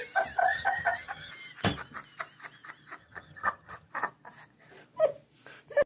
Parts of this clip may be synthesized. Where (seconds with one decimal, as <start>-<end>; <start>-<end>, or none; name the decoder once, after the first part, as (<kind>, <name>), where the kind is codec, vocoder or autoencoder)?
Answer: 0.4-1.3 (vocoder, HiFi-GAN); 3.0-3.9